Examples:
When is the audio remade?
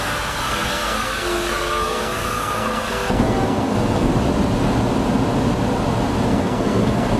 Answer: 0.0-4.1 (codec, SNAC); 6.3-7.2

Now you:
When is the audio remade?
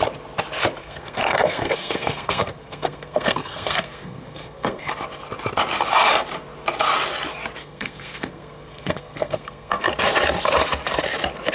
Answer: 0.8-4.9 (codec, SNAC); 7.6-9.9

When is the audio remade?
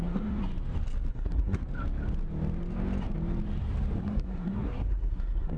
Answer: 0.0-0.4 (codec, SNAC); 1.1-1.6; 4.0-5.6